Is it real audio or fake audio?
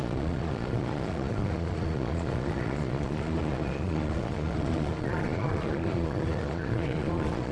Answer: fake